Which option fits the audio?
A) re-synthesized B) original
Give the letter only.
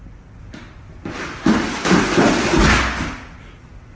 B